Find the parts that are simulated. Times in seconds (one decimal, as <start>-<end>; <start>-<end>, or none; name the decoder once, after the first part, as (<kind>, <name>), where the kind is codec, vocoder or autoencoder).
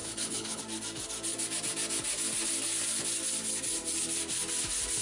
0.0-0.6 (codec, HILCodec)